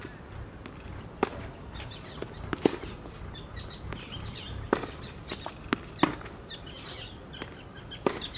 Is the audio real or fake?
real